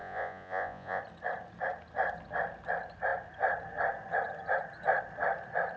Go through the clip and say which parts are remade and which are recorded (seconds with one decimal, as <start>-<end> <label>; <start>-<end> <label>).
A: 0.0-1.0 remade; 1.0-5.8 recorded